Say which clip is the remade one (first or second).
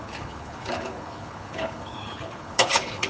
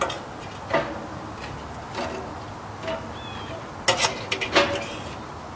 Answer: first